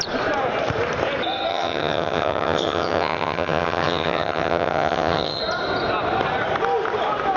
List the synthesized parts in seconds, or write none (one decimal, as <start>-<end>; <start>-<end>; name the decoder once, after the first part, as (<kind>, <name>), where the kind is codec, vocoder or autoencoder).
1.5-5.4 (vocoder, HiFi-GAN)